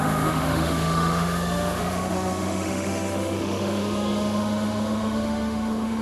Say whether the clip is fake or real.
fake